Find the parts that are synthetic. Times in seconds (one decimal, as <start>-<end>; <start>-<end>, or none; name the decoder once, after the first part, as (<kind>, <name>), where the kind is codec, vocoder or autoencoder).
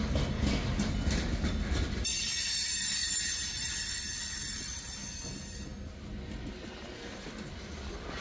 none